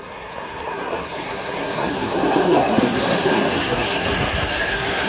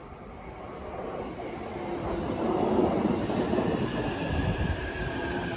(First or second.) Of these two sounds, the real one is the second